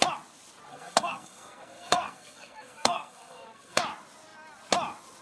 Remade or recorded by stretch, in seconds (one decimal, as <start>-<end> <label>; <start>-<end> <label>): 0.0-0.7 recorded; 0.7-3.8 remade; 3.8-5.2 recorded